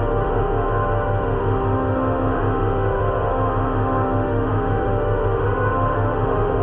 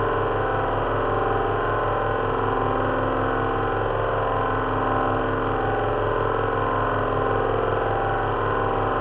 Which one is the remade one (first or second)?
first